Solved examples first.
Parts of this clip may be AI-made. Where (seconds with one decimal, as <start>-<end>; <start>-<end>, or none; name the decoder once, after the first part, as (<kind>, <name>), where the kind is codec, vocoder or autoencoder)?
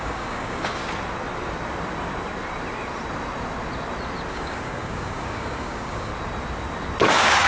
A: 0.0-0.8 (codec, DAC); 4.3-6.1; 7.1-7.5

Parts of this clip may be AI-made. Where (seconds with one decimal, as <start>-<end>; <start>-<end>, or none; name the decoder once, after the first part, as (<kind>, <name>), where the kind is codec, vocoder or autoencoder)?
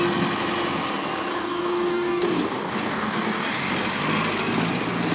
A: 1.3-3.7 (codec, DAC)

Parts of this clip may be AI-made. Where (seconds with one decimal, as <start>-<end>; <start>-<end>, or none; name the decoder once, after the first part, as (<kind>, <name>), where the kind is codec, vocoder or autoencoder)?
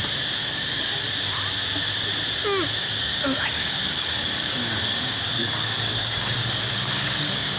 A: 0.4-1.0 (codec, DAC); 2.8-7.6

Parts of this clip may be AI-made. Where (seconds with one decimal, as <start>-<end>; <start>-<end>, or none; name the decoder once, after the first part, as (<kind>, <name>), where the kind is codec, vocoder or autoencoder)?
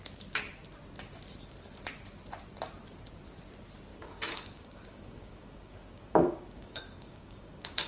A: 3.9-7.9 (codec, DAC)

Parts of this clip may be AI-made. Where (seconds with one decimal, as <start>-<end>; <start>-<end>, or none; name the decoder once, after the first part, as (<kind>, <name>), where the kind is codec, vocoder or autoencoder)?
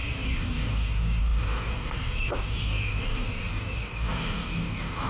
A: 0.0-5.1 (codec, DAC)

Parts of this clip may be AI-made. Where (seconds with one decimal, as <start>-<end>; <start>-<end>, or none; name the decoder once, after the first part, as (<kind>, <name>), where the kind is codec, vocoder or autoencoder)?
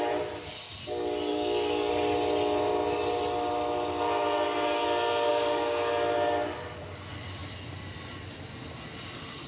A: 1.3-1.9 (codec, DAC); 5.3-5.9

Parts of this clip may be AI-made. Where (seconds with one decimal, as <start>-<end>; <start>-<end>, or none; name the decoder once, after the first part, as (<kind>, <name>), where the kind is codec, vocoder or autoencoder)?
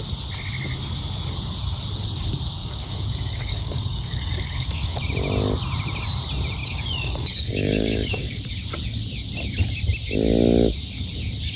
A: 2.6-5.0 (codec, DAC); 6.6-8.5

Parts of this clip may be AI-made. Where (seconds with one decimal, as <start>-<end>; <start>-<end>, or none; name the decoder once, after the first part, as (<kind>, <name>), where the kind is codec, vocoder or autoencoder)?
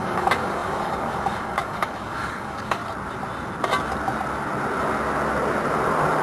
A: 0.0-2.8 (codec, DAC)